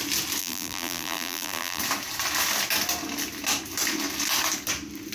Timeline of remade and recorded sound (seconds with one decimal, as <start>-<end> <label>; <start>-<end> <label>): 0.0-0.4 recorded; 0.4-1.8 remade; 1.8-5.1 recorded